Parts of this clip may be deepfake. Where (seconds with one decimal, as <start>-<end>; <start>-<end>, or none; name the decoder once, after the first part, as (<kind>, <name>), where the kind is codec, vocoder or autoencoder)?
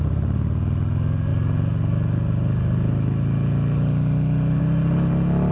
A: none